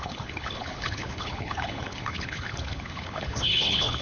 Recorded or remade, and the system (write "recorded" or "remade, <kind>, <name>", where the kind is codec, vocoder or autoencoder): remade, codec, HILCodec